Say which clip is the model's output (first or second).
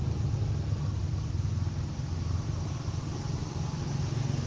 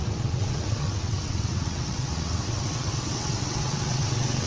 second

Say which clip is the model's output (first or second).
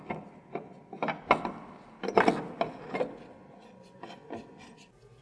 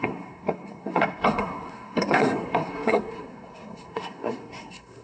second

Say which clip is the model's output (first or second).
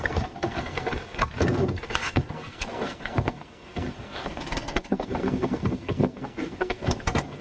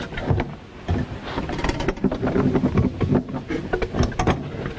first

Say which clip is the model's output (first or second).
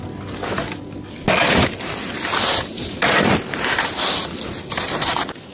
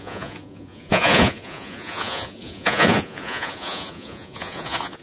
second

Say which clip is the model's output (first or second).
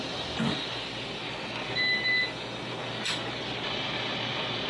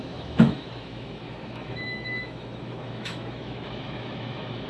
second